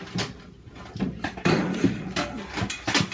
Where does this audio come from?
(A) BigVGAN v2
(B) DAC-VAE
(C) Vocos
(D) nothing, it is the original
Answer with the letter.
D